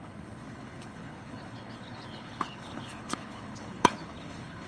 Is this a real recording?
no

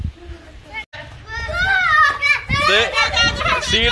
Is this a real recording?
yes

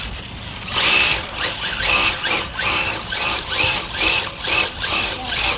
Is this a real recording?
no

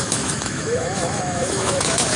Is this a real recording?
no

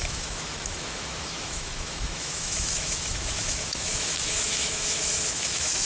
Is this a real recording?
no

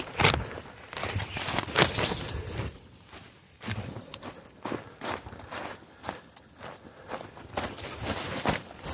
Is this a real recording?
yes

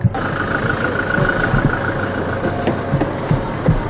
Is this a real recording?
yes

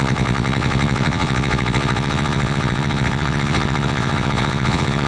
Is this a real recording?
no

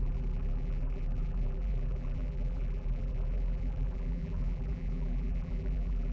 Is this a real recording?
no